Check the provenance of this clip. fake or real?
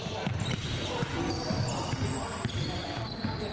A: real